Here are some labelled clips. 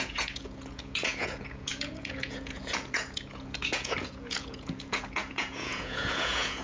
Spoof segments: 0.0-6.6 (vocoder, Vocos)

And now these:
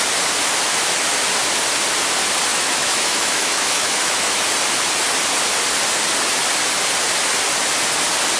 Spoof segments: 2.5-4.4 (autoencoder, DAC-VAE)

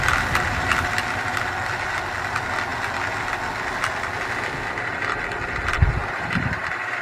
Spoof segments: 6.0-7.0 (vocoder, BigVGAN v2)